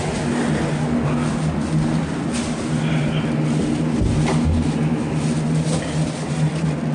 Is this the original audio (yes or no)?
yes